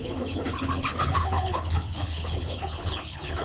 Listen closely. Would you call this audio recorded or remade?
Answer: remade